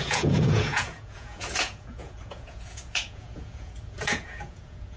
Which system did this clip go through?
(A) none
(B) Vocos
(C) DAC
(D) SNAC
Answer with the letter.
B